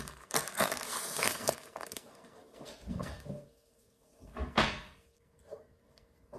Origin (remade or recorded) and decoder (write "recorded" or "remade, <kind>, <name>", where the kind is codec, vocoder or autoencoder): remade, codec, SNAC